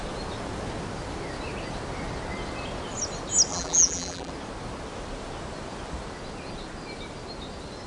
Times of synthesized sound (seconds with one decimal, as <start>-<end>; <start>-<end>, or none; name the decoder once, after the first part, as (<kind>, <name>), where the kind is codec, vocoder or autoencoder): 3.5-4.3 (vocoder, BigVGAN v2)